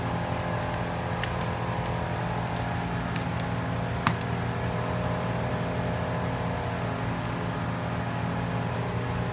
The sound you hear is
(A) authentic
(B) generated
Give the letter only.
A